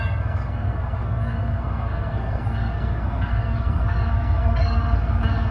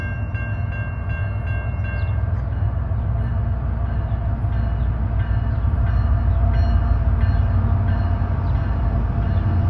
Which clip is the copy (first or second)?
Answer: first